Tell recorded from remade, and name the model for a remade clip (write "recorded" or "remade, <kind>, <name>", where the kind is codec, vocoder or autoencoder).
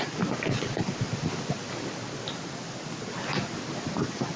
recorded